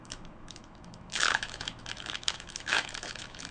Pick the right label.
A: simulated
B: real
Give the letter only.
A